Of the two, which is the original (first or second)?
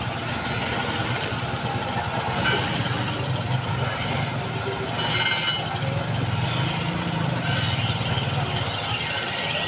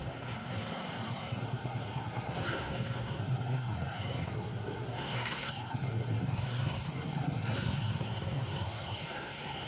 first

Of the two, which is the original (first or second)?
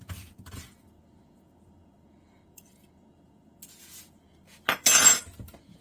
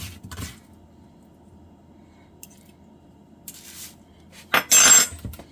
second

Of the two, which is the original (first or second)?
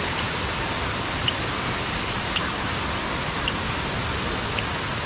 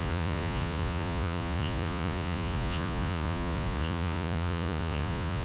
first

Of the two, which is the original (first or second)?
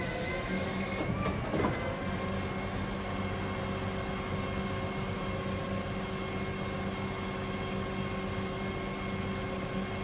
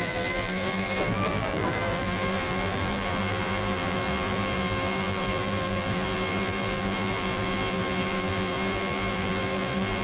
first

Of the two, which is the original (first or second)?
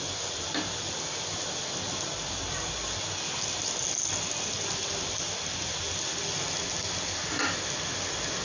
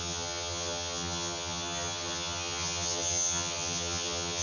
first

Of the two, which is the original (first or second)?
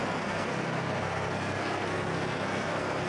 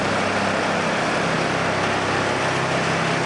second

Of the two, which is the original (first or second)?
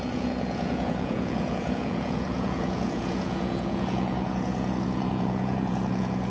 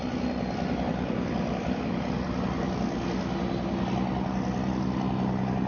second